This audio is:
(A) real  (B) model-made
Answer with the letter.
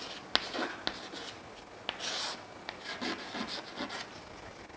A